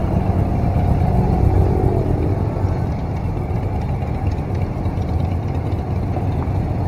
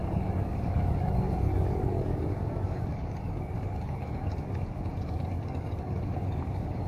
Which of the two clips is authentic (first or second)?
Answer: first